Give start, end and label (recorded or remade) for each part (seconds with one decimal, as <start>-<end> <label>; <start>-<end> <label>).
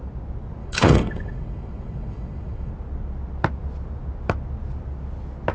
0.0-0.6 recorded; 0.6-2.7 remade; 2.7-5.5 recorded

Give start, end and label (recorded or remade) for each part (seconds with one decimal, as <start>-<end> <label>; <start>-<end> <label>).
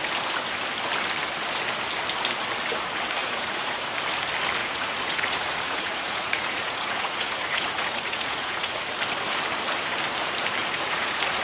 0.0-3.2 recorded; 3.2-3.7 remade; 3.7-4.6 recorded; 4.6-8.9 remade; 8.9-10.6 recorded; 10.6-11.4 remade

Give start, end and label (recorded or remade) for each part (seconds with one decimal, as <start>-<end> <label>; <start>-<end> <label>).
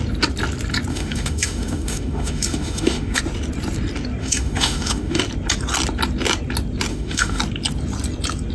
0.0-0.9 recorded; 0.9-3.2 remade; 3.2-4.2 recorded; 4.2-5.2 remade; 5.2-6.9 recorded; 6.9-7.4 remade; 7.4-8.5 recorded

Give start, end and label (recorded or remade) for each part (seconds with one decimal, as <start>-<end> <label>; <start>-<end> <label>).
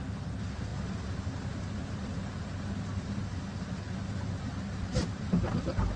0.0-6.0 recorded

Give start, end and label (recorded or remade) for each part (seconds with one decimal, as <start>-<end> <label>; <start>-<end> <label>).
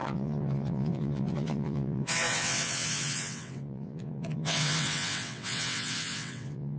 0.0-6.8 remade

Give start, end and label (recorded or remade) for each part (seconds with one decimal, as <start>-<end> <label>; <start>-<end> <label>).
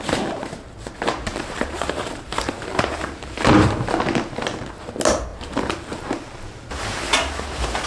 0.0-1.3 recorded; 1.3-4.0 remade; 4.0-5.3 recorded; 5.3-7.0 remade; 7.0-7.9 recorded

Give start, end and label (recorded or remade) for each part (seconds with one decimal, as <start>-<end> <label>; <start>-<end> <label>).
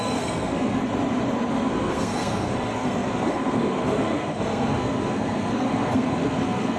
0.0-0.8 remade; 0.8-1.5 recorded; 1.5-6.8 remade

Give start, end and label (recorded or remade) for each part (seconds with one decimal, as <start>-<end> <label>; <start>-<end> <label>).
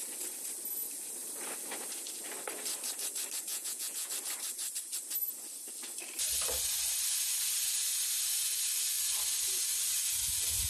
0.0-3.5 recorded; 3.5-4.1 remade; 4.1-10.7 recorded